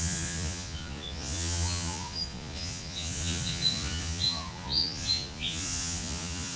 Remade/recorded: remade